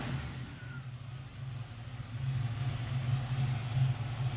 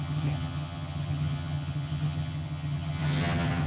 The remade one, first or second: second